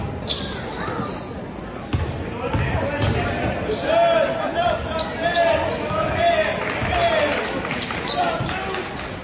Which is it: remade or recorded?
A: recorded